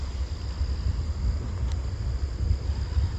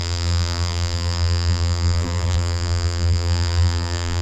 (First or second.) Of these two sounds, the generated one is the second